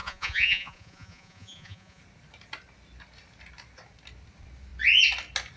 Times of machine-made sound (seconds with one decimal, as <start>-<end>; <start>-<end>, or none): 0.0-2.0